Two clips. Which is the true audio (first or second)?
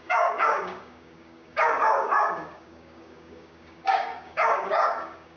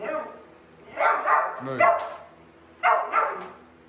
second